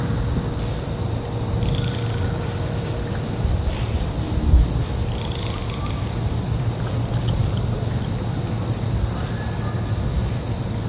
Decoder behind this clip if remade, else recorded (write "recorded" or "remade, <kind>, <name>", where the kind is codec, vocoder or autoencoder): recorded